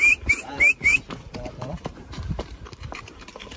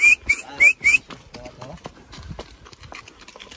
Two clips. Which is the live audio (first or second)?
second